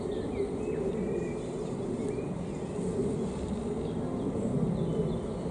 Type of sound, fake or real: real